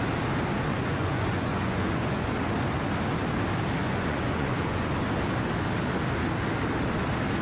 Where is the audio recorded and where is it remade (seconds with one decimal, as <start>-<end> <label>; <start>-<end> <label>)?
0.0-0.7 recorded; 0.7-2.3 remade; 2.3-3.8 recorded; 3.8-4.9 remade; 4.9-7.4 recorded